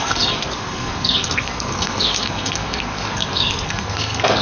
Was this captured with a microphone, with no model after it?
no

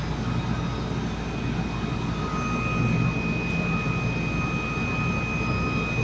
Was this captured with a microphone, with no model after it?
yes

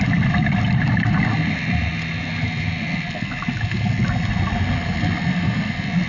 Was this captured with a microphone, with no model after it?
yes